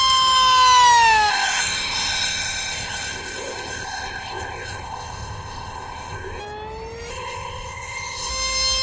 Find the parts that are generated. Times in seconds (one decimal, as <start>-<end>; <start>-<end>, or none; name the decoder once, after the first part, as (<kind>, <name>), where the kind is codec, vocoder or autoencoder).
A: 1.3-6.4 (codec, ZipCodec); 7.1-8.3